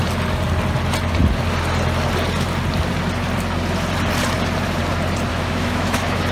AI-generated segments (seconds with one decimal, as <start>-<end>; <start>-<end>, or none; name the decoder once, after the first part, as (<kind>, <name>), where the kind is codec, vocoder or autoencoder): 5.3-6.3 (autoencoder, DAC-VAE)